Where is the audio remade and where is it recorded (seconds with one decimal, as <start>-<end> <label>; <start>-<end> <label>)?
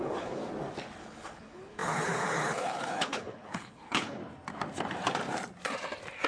0.0-0.4 remade; 0.4-1.0 recorded; 1.0-4.2 remade; 4.2-6.3 recorded